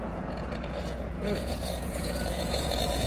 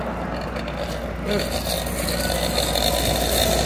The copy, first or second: first